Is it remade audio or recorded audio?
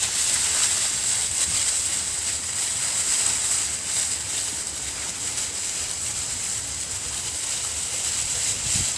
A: recorded